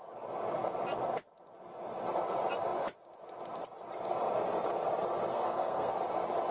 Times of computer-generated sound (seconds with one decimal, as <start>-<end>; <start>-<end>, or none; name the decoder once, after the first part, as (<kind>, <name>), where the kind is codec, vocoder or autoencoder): 5.3-5.9 (codec, SNAC)